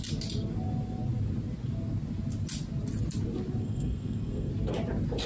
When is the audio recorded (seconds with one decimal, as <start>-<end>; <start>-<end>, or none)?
0.0-3.6; 4.5-5.3